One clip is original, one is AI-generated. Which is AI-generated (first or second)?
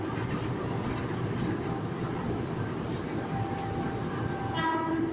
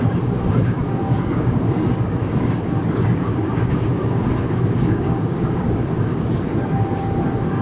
second